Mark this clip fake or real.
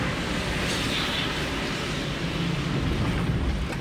real